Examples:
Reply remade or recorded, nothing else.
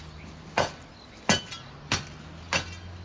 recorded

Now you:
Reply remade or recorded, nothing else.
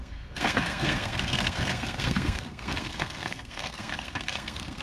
remade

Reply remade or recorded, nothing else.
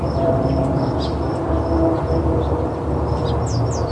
recorded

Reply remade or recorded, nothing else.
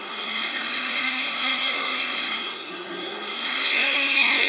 remade